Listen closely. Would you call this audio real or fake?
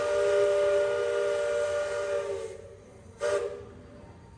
real